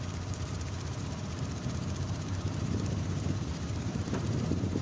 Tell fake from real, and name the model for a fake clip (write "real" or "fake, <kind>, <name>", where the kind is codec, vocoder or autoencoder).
fake, vocoder, BigVGAN v2